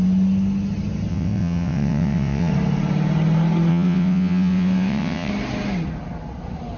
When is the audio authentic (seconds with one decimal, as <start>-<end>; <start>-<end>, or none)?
0.0-1.1; 2.5-3.7; 5.3-6.8